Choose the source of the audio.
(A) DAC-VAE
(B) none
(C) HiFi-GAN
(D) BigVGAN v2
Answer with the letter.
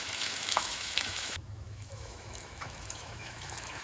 A